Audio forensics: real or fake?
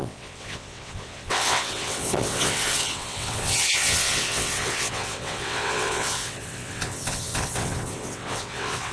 fake